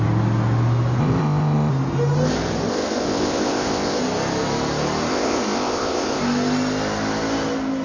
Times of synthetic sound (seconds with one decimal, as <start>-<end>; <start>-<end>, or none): 1.0-1.7; 2.7-4.0; 5.1-6.2